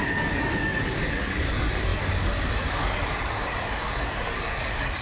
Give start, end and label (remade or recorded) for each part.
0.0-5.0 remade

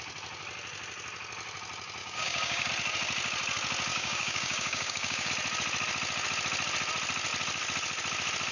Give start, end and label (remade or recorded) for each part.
0.0-2.0 recorded; 2.0-2.7 remade; 2.7-3.9 recorded; 3.9-5.3 remade; 5.3-8.5 recorded

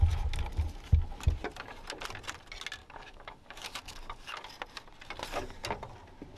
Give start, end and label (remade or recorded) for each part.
0.0-2.8 recorded; 2.8-4.5 remade; 4.5-6.4 recorded